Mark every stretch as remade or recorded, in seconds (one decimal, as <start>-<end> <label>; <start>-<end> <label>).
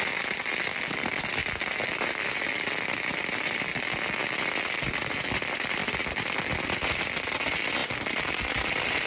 0.0-1.4 remade; 1.4-2.5 recorded; 2.5-3.7 remade; 3.7-4.9 recorded; 4.9-9.1 remade